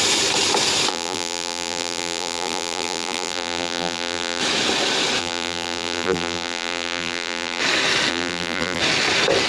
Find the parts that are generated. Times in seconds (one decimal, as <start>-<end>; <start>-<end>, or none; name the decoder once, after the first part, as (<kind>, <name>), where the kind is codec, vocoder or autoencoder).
0.9-4.4 (vocoder, BigVGAN v2); 5.2-7.6; 8.1-8.8